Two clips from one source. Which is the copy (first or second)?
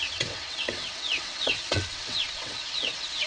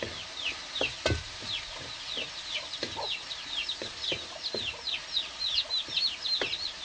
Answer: first